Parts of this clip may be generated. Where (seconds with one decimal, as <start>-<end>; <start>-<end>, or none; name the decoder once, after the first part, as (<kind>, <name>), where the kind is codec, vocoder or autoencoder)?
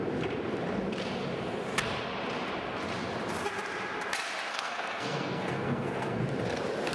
4.5-6.2 (codec, SNAC)